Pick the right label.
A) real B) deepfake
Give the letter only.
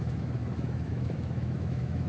B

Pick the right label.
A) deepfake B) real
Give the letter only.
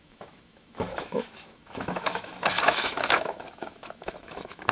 A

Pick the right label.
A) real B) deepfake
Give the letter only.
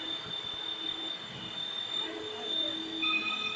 A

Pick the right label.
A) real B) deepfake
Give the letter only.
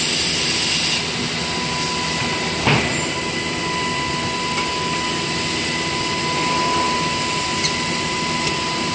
A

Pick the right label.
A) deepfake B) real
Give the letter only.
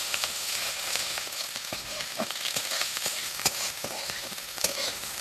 A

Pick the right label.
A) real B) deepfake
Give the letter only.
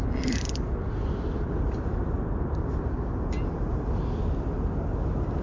A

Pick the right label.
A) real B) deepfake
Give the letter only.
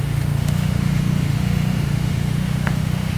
B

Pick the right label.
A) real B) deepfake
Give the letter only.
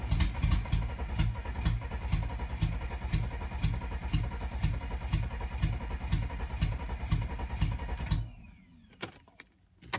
A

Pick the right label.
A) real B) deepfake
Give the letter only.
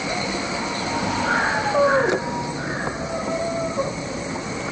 A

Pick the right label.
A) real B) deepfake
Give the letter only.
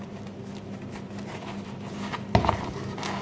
A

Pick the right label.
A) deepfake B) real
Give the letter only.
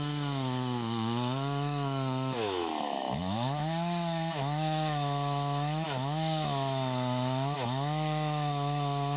A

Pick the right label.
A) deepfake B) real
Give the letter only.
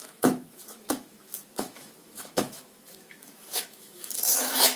A